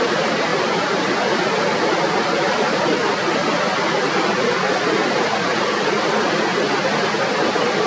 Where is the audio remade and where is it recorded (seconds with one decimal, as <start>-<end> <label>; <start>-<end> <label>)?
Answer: 0.0-7.9 recorded